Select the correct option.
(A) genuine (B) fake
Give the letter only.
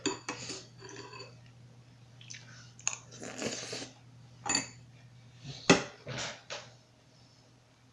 A